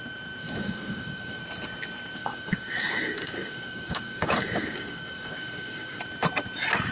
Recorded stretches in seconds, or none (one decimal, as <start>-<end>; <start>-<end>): 0.0-0.4; 1.4-2.2; 6.0-6.9